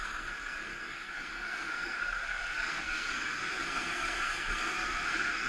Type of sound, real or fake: fake